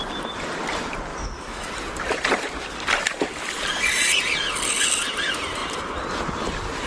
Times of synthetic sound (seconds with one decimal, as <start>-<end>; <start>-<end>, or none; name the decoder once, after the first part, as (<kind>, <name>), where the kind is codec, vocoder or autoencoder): 1.1-1.7 (autoencoder, DAC-VAE)